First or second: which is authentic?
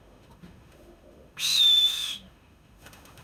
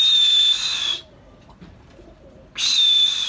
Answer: second